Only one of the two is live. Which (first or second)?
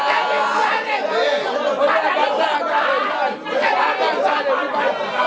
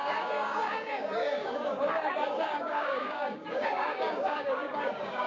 first